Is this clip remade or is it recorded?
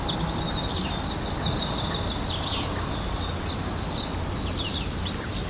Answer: recorded